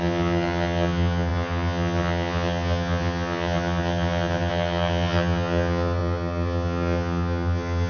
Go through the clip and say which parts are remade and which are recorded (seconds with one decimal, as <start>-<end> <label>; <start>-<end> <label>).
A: 0.0-7.9 remade